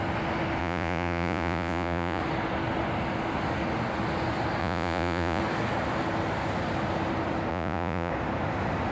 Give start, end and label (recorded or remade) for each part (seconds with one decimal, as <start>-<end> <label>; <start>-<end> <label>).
0.0-0.6 recorded; 0.6-2.2 remade; 2.2-4.6 recorded; 4.6-5.4 remade; 5.4-7.5 recorded; 7.5-8.1 remade; 8.1-8.9 recorded